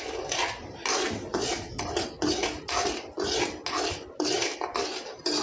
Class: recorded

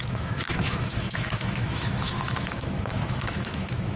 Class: remade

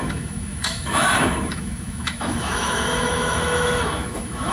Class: remade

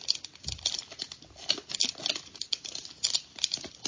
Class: recorded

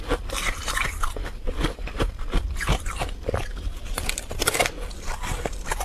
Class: recorded